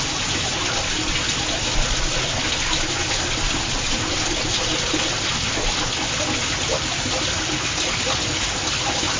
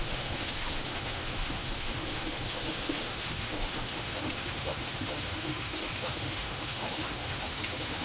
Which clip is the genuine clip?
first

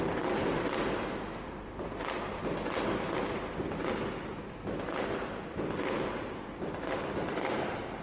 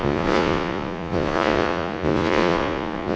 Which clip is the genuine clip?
first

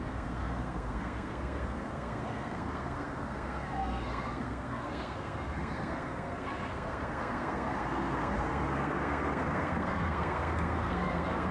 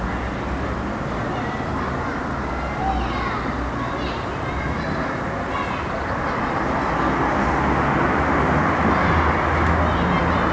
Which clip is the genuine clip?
second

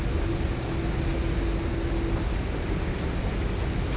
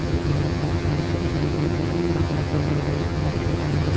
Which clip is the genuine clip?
first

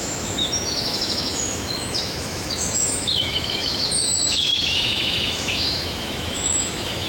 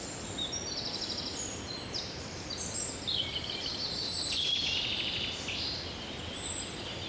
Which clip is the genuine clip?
second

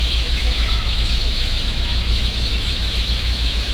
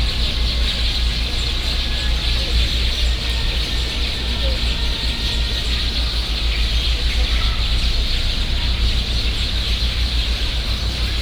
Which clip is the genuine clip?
second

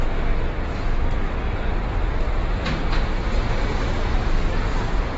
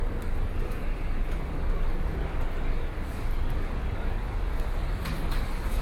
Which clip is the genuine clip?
first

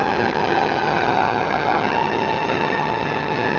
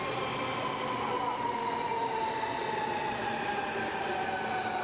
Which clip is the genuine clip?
second